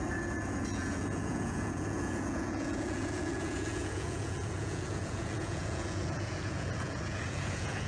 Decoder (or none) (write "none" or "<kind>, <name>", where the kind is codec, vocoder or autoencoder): vocoder, Vocos